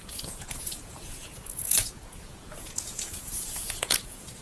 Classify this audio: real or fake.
fake